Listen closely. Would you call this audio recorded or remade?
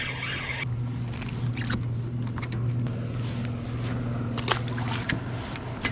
recorded